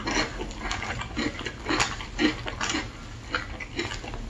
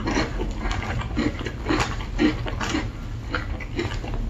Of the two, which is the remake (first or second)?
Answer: second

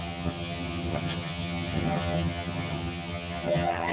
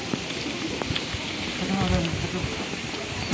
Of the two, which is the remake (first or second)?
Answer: first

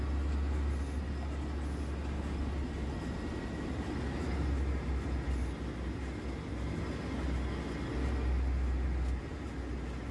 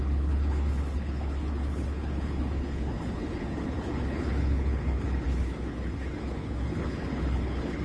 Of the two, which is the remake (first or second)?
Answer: second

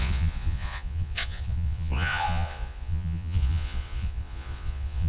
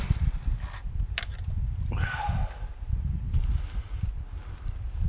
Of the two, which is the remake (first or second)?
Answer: first